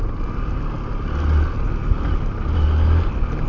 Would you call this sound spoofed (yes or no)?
no